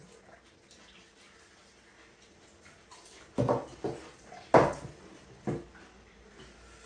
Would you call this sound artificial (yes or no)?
no